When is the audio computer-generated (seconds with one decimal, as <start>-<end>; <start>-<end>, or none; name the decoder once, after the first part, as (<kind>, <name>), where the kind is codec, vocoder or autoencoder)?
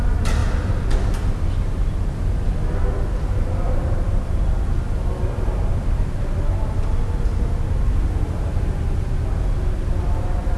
none